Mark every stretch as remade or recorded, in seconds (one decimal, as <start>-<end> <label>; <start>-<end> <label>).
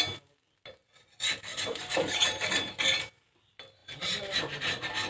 0.0-1.5 recorded; 1.5-2.5 remade; 2.5-3.8 recorded; 3.8-4.4 remade; 4.4-5.1 recorded